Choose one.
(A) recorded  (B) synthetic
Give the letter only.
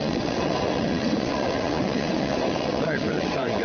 B